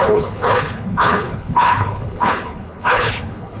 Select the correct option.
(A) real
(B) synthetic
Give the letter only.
B